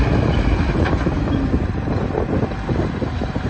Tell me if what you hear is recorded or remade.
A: recorded